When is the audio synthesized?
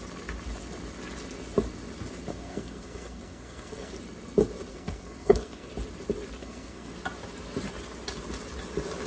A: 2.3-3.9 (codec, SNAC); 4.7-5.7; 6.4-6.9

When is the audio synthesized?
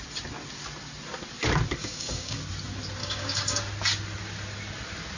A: 1.8-2.4 (codec, DAC); 3.0-3.6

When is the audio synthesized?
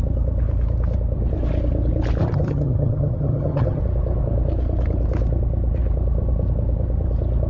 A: 2.2-3.8 (vocoder, HiFi-GAN)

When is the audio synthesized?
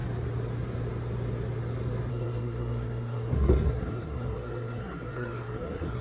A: 2.1-6.0 (codec, SNAC)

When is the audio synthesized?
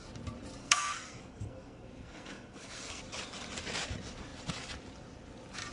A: 0.6-3.0 (codec, SNAC)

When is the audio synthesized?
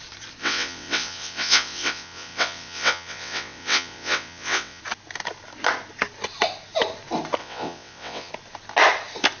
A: 0.4-4.8 (vocoder, WaveNeXt); 7.4-8.3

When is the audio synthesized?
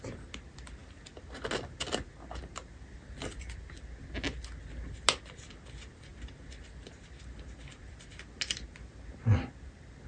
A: none